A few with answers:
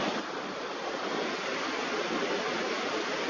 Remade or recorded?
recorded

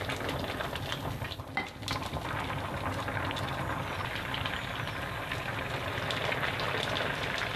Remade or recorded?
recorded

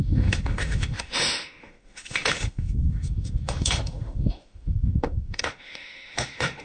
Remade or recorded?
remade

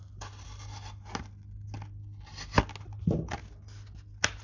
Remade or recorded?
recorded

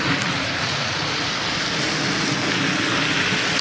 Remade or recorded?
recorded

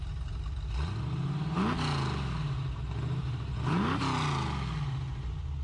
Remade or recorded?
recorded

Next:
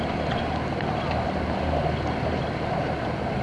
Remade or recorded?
recorded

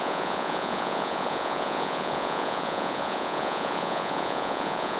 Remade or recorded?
remade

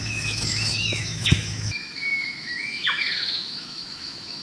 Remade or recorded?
remade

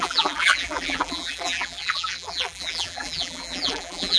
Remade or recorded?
remade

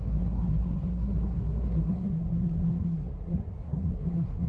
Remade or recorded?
remade